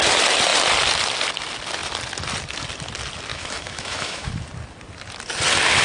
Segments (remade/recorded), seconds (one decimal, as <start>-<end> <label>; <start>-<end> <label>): 0.0-3.3 recorded; 3.3-4.3 remade; 4.3-5.8 recorded